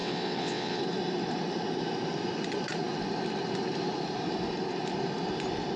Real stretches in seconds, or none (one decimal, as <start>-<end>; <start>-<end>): 0.8-5.8

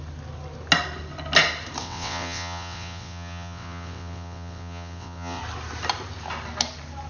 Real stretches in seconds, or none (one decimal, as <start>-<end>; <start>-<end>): 0.0-1.8; 5.4-7.1

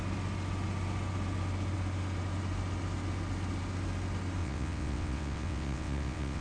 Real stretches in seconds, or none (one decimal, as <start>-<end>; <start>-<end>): 0.0-4.4

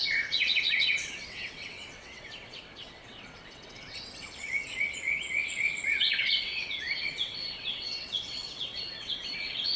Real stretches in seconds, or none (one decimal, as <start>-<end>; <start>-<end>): none

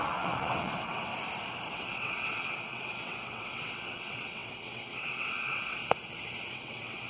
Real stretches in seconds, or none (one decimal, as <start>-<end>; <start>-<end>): 1.1-1.7; 5.8-6.5

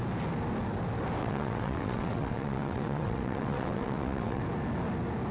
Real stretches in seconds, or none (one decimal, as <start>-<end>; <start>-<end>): 0.0-1.2; 4.4-5.3

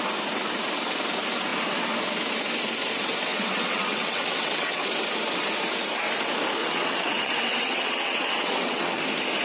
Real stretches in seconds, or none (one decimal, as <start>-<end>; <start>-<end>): 0.0-3.3; 4.8-6.6; 9.0-9.4

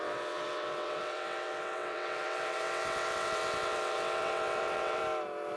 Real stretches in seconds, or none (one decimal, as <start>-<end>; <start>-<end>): 5.0-5.6